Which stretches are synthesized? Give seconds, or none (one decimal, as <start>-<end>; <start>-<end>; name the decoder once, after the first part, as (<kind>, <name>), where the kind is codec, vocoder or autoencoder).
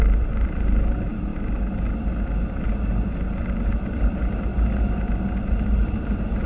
0.0-1.3 (vocoder, BigVGAN v2); 3.7-4.5; 5.4-6.5